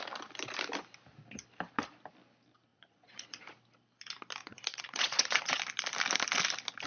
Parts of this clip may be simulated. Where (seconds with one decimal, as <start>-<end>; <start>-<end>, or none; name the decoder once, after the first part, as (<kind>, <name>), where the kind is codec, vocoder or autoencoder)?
2.7-3.4 (vocoder, Vocos); 4.4-5.6